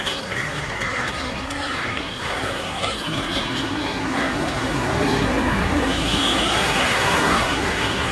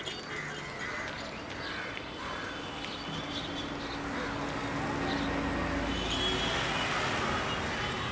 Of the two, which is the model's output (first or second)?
first